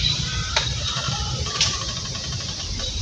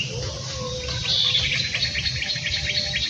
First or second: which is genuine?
second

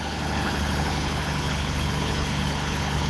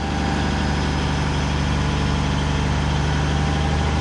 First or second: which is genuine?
second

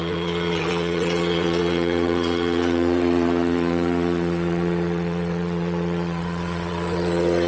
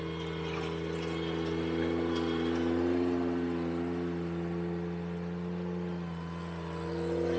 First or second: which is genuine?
second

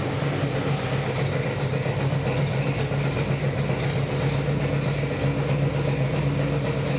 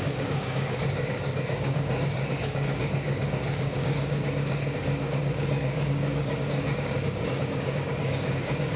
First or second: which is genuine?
first